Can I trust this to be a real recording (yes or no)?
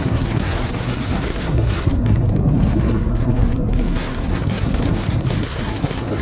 no